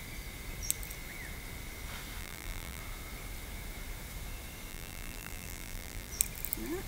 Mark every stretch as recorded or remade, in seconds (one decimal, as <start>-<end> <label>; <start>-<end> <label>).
0.0-2.2 recorded; 2.2-2.8 remade; 2.8-4.7 recorded; 4.7-6.1 remade; 6.1-6.9 recorded